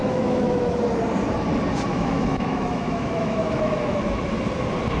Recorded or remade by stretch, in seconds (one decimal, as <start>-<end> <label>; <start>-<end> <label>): 0.0-0.8 remade; 0.8-1.9 recorded; 1.9-4.2 remade; 4.2-5.0 recorded